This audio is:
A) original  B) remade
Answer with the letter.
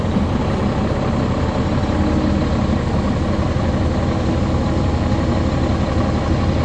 A